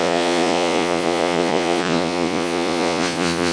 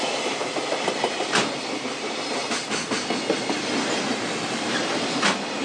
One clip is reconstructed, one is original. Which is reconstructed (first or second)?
first